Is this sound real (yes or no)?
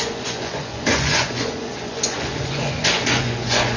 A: no